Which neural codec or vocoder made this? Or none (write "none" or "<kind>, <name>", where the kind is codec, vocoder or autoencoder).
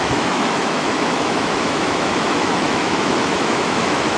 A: autoencoder, DAC-VAE